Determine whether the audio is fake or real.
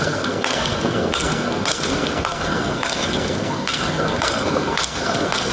fake